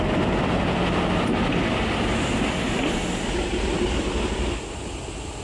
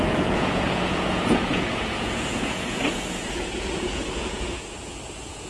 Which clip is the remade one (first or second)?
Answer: second